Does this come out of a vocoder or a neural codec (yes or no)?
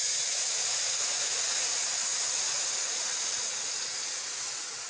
yes